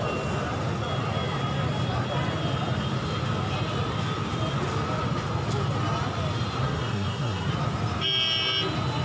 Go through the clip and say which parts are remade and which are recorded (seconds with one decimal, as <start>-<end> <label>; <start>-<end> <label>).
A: 0.0-6.6 recorded; 6.6-7.5 remade; 7.5-9.0 recorded